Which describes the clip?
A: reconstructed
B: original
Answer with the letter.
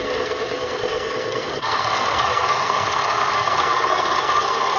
A